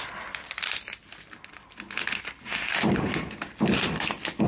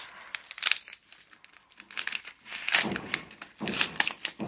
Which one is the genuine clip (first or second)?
first